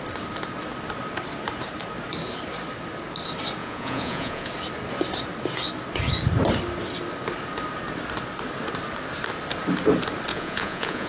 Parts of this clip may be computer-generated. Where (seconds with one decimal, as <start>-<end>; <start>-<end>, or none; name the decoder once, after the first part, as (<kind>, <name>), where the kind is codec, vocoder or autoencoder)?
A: 3.6-4.5 (vocoder, Vocos); 10.3-11.1